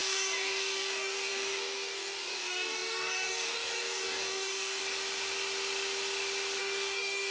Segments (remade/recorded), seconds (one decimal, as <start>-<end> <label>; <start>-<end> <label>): 0.0-4.8 remade; 4.8-6.6 recorded; 6.6-7.3 remade